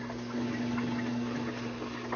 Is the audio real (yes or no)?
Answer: yes